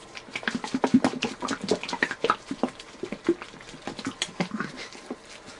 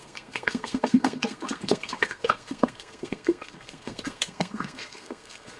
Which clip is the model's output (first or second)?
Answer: second